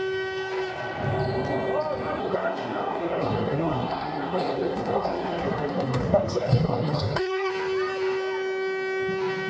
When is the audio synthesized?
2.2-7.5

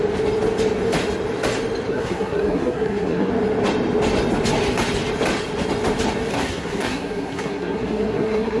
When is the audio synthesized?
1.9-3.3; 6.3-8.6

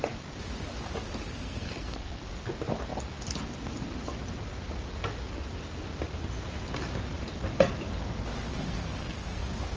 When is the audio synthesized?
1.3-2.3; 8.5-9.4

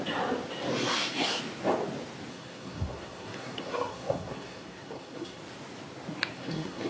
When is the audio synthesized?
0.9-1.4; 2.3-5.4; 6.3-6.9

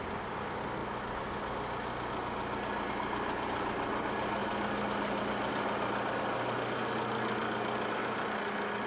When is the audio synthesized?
none